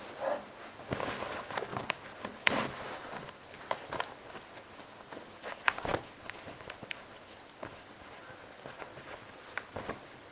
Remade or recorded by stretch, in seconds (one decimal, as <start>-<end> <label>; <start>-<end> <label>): 0.0-10.3 recorded